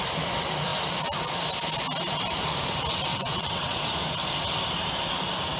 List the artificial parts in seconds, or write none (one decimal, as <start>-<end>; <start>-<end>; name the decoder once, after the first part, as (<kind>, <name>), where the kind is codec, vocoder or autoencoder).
3.1-3.9 (vocoder, WaveNeXt)